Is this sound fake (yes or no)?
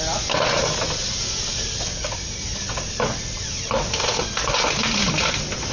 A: no